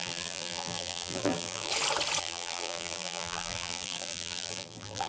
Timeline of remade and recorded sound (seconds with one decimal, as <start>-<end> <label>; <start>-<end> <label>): 0.0-1.7 remade; 1.7-2.2 recorded; 2.2-5.1 remade